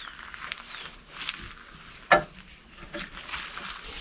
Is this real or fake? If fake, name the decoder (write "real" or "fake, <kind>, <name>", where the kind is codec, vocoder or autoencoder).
real